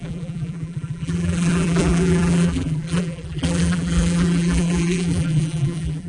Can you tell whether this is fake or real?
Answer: fake